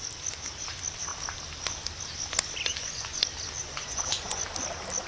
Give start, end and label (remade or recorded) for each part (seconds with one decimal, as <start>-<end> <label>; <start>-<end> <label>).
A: 0.0-2.7 recorded; 2.7-3.2 remade; 3.2-3.6 recorded; 3.6-4.4 remade; 4.4-5.1 recorded